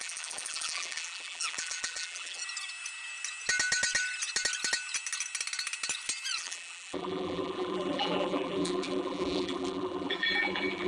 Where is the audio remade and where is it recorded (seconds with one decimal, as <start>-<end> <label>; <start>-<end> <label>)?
0.0-2.4 remade; 2.4-6.4 recorded; 6.4-10.9 remade